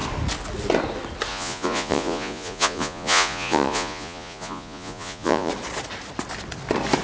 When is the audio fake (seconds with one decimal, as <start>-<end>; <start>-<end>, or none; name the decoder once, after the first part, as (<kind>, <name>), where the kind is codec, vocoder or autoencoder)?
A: 1.3-5.5 (vocoder, Vocos)